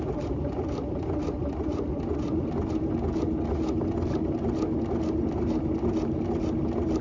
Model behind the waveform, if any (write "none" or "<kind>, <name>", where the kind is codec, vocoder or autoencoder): none